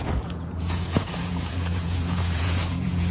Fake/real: fake